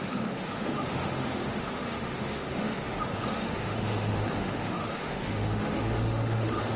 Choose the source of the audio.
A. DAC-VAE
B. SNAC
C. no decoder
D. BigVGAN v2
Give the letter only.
A